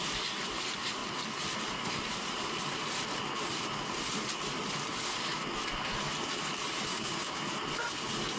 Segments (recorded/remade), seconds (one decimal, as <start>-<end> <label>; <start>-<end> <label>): 0.0-6.9 recorded; 6.9-7.4 remade; 7.4-8.4 recorded